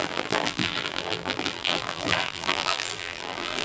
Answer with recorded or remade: remade